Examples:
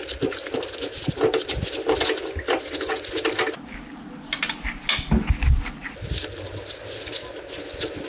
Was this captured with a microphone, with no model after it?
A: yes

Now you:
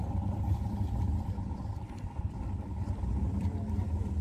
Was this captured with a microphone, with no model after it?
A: no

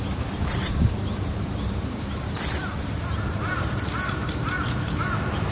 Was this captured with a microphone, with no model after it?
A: no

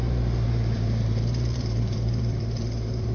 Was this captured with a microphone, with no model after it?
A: no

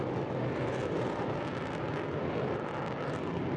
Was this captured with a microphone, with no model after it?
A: yes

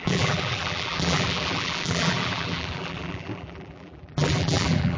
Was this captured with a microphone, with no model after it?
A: no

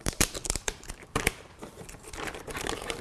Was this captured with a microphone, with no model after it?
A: no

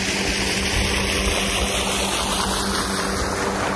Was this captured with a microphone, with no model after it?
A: yes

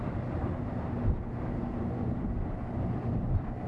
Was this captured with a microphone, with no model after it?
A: no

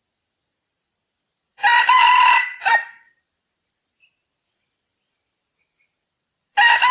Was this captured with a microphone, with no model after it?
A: no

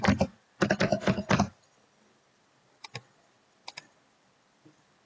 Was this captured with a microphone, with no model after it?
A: no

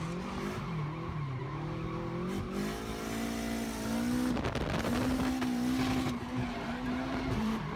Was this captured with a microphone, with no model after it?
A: yes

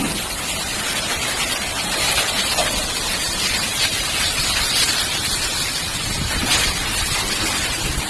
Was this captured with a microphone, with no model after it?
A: no